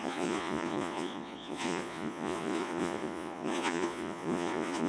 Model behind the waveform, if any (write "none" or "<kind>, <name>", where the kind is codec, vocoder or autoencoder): vocoder, Vocos